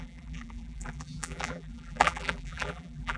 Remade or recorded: remade